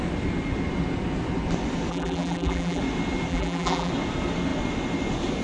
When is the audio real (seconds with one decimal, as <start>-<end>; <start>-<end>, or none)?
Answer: 0.0-1.9; 2.8-3.3; 3.9-5.4